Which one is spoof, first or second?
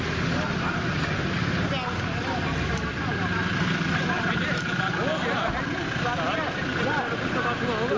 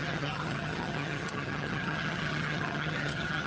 second